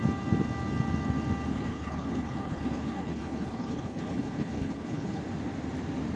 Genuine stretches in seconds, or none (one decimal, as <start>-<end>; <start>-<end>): 0.0-1.5; 5.2-6.2